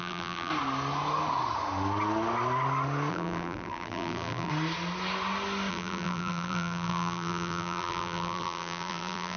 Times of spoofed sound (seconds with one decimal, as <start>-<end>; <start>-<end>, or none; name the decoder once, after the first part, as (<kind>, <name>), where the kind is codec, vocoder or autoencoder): 0.0-0.5 (vocoder, BigVGAN v2); 3.1-4.5; 5.7-9.4